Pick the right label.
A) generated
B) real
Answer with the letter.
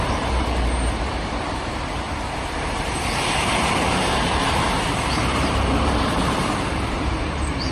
A